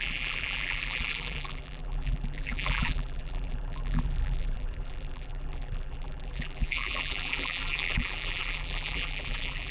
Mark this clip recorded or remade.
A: remade